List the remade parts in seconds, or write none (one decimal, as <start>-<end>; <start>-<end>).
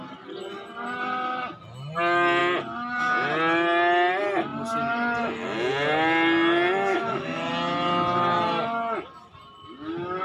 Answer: 6.9-7.5